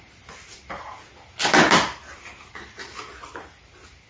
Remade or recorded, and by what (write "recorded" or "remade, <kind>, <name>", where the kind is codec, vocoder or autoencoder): recorded